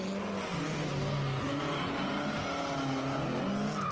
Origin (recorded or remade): recorded